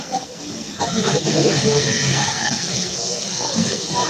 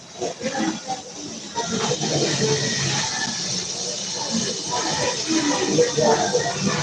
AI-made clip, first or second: first